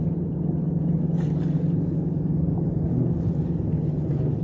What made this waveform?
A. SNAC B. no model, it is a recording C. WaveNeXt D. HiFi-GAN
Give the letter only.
B